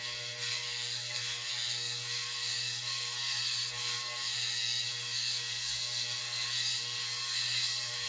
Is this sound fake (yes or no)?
yes